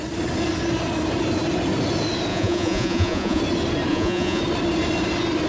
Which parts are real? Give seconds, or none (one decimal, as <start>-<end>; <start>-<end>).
0.0-2.3; 3.4-3.9; 4.4-5.5